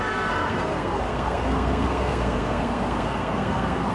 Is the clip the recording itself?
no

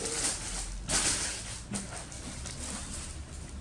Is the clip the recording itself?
yes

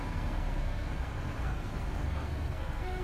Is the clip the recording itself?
no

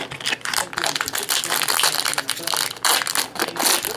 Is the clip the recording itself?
yes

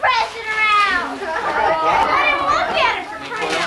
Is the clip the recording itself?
yes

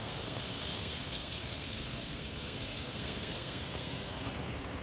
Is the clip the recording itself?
no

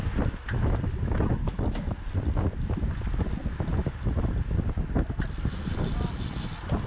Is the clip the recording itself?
yes